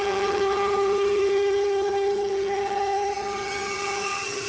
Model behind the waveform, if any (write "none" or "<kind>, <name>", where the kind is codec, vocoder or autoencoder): vocoder, HiFi-GAN